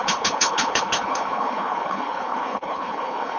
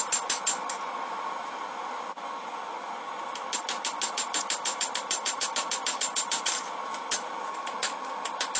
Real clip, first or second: second